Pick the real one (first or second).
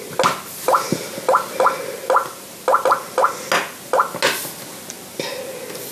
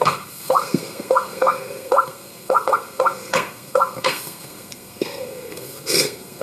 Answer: first